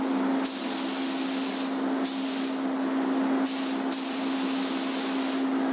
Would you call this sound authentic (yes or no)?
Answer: yes